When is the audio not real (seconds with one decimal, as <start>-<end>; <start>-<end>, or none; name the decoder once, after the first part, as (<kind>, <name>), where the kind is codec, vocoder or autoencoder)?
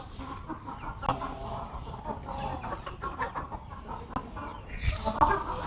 1.1-2.0 (vocoder, BigVGAN v2); 2.5-3.0